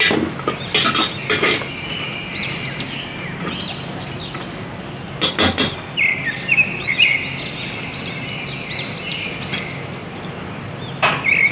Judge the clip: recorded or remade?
recorded